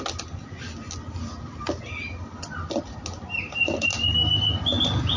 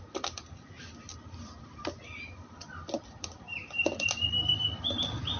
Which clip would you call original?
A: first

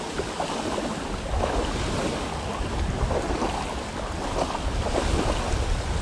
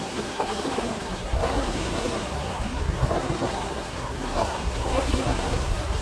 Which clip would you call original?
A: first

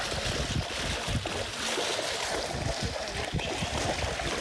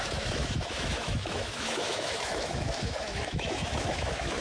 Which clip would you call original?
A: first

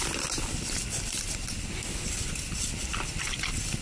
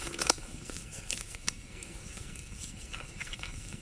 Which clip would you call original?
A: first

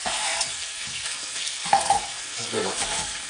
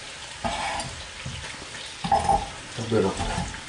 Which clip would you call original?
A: second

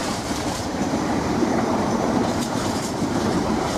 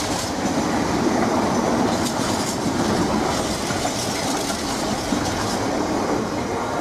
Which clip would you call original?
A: second